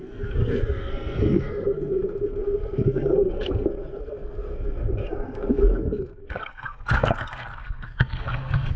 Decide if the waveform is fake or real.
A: fake